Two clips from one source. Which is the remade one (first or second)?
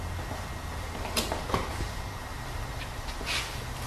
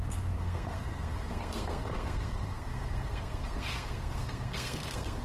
second